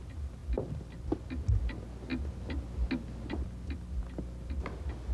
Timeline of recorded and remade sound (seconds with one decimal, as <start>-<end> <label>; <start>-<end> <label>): 0.0-5.1 recorded